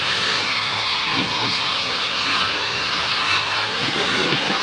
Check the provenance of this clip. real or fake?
fake